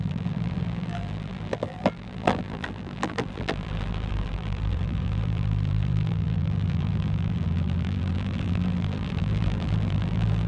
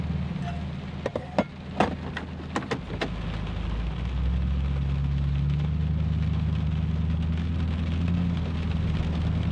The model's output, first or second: first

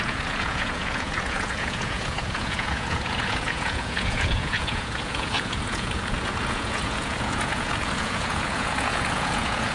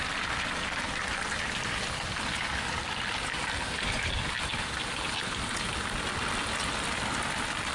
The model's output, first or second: first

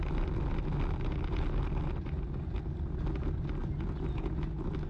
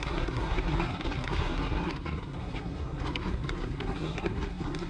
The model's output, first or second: second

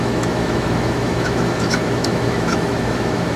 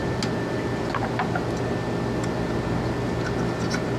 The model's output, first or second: first